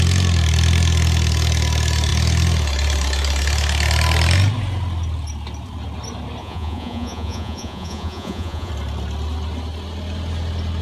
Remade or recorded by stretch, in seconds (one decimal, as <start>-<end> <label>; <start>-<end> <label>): 0.0-6.4 recorded; 6.4-8.7 remade; 8.7-10.8 recorded

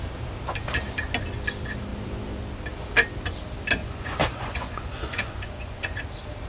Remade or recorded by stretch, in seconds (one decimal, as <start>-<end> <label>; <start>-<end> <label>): 0.0-3.8 recorded; 3.8-6.0 remade; 6.0-6.5 recorded

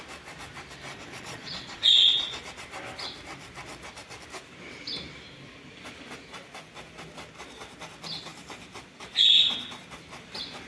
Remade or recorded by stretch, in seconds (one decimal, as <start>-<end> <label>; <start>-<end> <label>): 0.0-0.9 recorded; 0.9-2.4 remade; 2.4-10.7 recorded

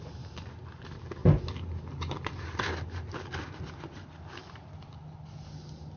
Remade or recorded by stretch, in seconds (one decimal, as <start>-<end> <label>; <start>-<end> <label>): 0.0-6.0 recorded

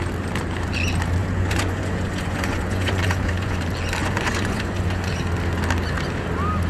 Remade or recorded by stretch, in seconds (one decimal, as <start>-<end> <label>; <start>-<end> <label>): 0.0-1.2 recorded; 1.2-3.6 remade; 3.6-4.0 recorded; 4.0-5.1 remade; 5.1-6.7 recorded

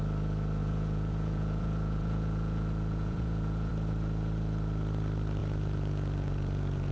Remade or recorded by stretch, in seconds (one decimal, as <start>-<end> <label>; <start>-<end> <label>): 0.0-0.6 recorded; 0.6-3.7 remade; 3.7-5.4 recorded; 5.4-6.9 remade

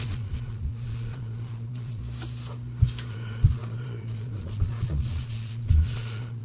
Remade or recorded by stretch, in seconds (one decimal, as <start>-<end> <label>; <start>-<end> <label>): 0.0-2.0 remade; 2.0-3.1 recorded; 3.1-6.4 remade